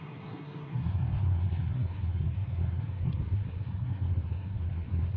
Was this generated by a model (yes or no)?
yes